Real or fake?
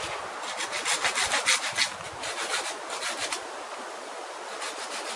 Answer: real